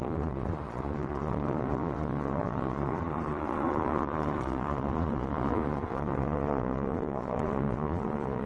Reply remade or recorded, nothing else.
remade